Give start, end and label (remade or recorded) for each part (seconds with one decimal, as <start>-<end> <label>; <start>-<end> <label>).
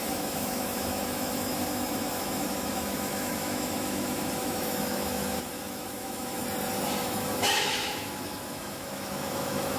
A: 0.0-6.4 remade; 6.4-7.0 recorded; 7.0-9.8 remade